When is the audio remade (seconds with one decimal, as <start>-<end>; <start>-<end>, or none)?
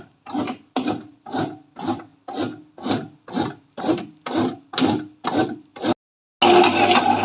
none